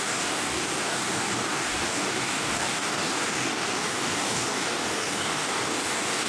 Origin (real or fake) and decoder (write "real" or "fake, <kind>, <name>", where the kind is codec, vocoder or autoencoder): fake, codec, DAC